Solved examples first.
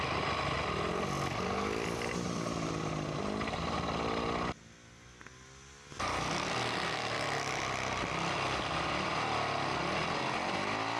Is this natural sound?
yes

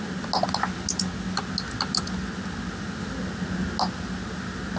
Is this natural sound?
yes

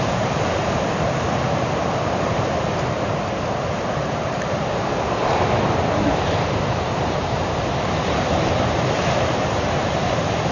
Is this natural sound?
no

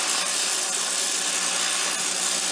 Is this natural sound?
yes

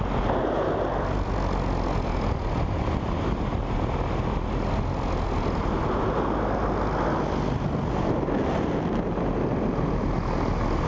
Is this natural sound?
yes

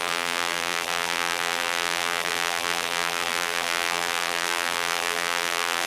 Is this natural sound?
no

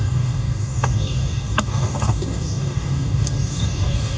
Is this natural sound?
no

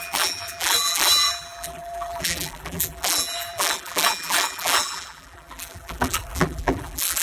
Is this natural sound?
no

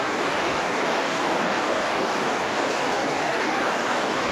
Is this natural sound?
no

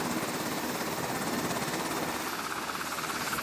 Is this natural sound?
yes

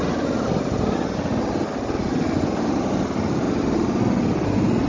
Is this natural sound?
yes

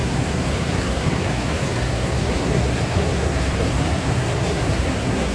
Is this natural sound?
no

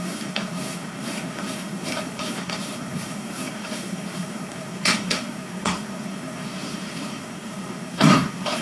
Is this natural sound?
no